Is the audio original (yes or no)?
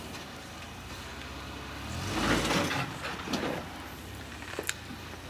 yes